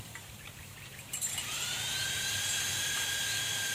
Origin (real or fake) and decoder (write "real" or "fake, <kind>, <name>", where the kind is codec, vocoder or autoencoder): fake, vocoder, BigVGAN v2